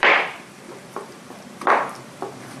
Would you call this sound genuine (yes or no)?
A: no